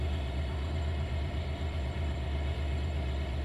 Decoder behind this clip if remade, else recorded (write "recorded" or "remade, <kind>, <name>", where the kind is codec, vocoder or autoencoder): remade, vocoder, BigVGAN v2